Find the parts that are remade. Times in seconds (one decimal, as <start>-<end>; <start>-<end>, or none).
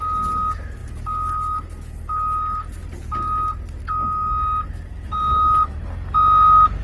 none